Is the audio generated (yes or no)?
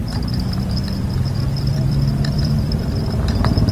yes